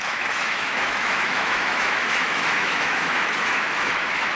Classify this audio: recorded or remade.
remade